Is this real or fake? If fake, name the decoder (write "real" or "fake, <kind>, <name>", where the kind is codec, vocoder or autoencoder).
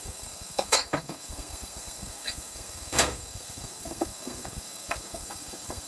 fake, codec, SNAC